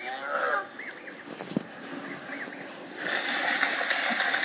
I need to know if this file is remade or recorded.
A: recorded